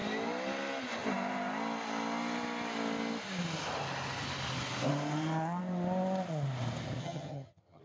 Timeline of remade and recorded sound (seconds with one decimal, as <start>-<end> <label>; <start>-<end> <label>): 0.0-7.0 recorded; 7.0-7.8 remade